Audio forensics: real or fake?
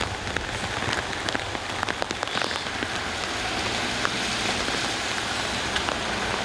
real